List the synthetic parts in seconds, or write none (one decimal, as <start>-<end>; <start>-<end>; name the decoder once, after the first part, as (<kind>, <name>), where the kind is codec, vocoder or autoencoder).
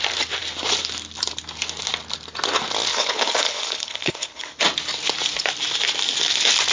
2.9-4.6 (codec, HILCodec)